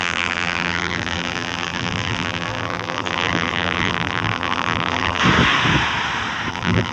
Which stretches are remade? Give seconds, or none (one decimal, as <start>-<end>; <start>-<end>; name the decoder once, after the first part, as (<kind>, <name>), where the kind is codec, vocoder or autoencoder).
0.0-5.2 (vocoder, BigVGAN v2); 6.5-6.9